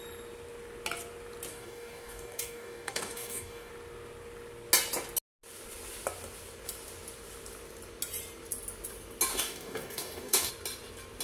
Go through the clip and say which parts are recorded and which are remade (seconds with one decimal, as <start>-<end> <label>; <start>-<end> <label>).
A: 0.0-1.5 recorded; 1.5-3.7 remade; 3.7-9.3 recorded; 9.3-10.5 remade; 10.5-11.2 recorded